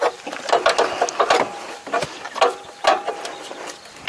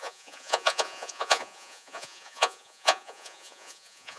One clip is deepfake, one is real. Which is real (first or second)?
first